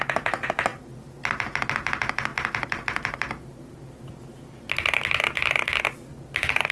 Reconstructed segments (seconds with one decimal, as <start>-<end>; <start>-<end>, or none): none